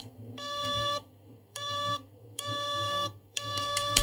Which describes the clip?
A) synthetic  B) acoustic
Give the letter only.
A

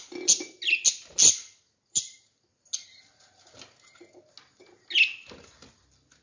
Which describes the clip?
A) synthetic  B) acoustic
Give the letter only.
B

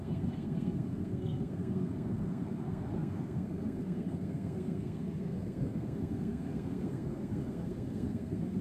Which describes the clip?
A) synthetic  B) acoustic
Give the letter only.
A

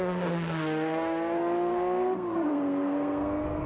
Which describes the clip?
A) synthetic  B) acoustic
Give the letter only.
A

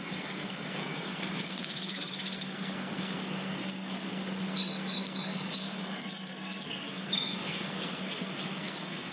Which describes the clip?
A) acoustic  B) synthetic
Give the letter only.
B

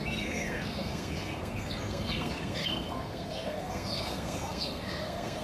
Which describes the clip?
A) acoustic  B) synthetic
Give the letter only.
B